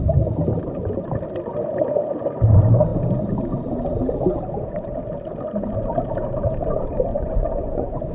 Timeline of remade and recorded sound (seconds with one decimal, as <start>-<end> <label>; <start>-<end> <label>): 0.0-7.1 recorded; 7.1-8.1 remade